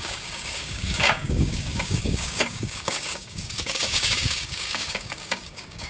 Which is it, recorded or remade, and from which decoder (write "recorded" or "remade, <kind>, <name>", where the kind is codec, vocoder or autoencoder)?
remade, codec, DAC